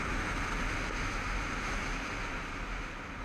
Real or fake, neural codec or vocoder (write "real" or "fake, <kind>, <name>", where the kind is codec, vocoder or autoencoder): real